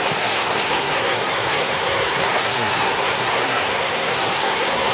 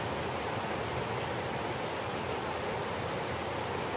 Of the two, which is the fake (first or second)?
first